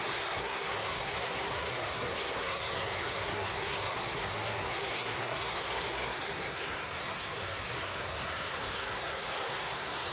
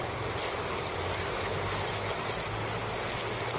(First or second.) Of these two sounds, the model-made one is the first